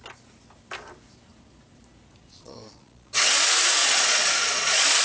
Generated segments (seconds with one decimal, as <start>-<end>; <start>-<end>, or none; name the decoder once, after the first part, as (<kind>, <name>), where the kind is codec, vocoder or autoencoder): 2.3-3.1 (vocoder, Vocos); 3.8-5.0